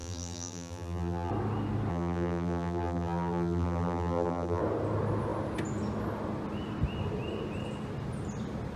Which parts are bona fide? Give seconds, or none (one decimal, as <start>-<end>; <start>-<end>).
1.3-1.9; 4.6-8.8